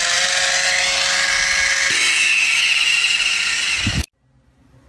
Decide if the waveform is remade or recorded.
recorded